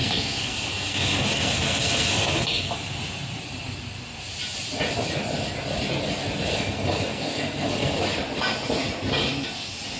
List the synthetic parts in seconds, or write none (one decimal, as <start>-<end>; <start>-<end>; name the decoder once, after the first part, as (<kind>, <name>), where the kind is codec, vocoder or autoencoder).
0.0-2.7 (codec, SNAC); 6.5-8.0